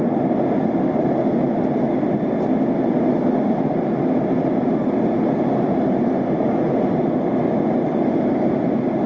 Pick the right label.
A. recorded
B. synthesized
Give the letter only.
A